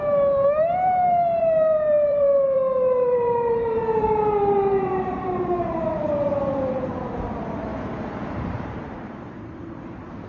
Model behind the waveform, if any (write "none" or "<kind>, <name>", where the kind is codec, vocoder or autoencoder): vocoder, BigVGAN v2